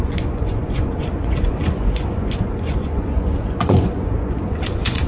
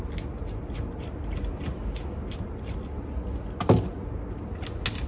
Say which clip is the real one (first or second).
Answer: second